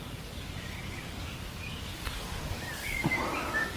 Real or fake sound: fake